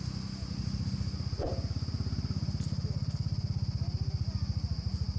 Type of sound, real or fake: real